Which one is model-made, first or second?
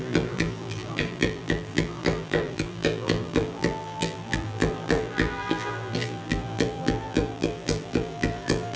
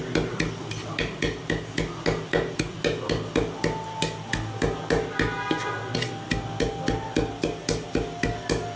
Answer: first